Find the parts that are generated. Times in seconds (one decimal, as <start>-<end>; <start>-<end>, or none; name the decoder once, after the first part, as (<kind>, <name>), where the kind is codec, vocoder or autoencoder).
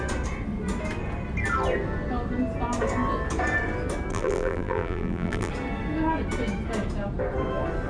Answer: 4.1-5.5 (vocoder, BigVGAN v2)